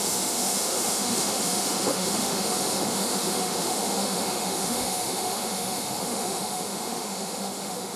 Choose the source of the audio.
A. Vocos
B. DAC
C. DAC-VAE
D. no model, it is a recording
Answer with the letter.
C